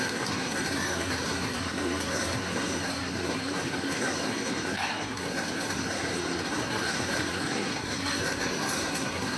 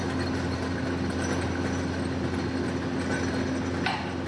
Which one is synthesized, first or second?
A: first